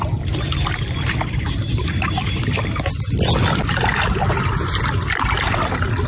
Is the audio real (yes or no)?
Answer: yes